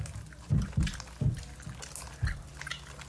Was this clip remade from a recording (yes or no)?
no